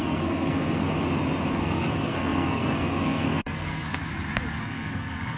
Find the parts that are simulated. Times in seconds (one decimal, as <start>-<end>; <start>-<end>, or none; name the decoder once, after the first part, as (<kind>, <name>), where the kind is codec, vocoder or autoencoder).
0.0-0.8 (codec, SNAC); 1.5-4.0; 4.6-5.4